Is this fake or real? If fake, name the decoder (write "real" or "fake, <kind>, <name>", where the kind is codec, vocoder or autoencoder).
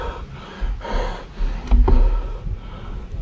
real